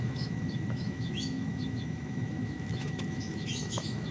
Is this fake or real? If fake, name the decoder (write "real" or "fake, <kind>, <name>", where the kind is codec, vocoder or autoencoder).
fake, autoencoder, DAC-VAE